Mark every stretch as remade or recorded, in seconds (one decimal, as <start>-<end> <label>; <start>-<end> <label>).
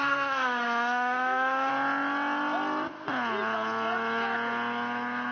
0.0-1.7 remade; 1.7-5.3 recorded